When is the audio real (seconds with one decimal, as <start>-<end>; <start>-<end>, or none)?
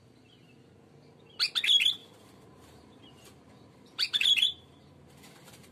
0.0-2.0